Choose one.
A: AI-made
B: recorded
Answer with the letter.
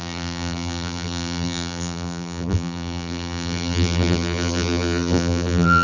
A